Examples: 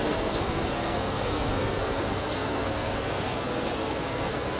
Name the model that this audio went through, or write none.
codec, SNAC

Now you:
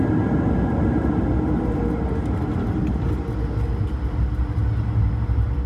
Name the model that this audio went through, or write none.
none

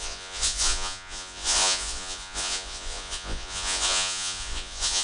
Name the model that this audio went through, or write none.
vocoder, Vocos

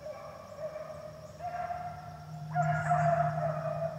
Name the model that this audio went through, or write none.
none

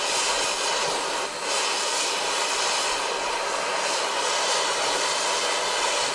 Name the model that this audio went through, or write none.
none